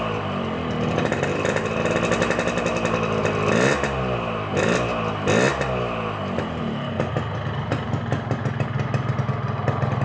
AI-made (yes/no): no